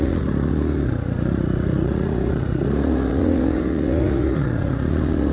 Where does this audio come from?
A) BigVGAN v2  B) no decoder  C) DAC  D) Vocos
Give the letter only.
D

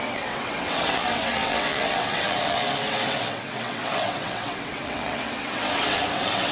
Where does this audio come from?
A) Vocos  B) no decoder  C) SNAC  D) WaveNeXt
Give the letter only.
D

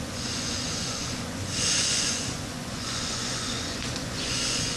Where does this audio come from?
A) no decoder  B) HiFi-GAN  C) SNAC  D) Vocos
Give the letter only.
D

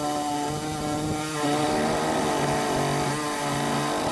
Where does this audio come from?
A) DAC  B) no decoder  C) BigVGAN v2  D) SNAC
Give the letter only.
B